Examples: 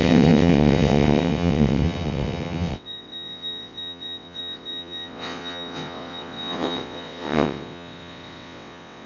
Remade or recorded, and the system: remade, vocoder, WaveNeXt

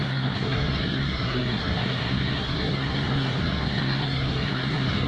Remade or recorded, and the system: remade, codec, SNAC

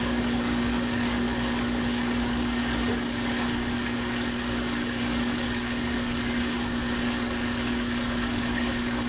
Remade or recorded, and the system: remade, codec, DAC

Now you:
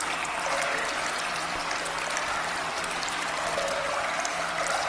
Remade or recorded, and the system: recorded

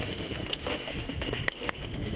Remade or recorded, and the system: remade, autoencoder, DAC-VAE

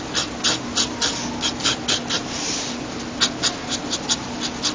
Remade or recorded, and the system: recorded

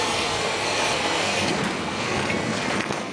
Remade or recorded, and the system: remade, codec, SNAC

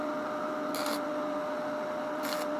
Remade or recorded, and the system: recorded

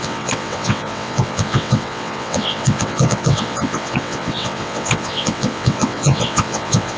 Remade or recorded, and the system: remade, vocoder, WaveNeXt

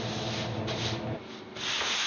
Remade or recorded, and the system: recorded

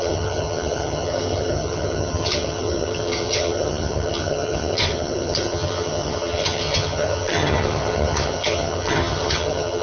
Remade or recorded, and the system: remade, vocoder, HiFi-GAN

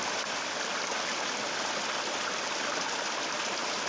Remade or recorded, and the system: recorded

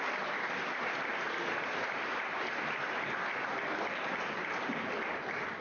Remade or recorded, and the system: recorded